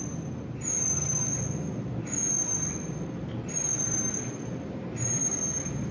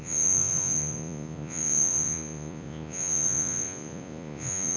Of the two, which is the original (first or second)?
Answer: first